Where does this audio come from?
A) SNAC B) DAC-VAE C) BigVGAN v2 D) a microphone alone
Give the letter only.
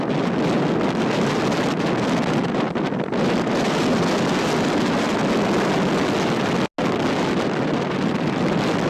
D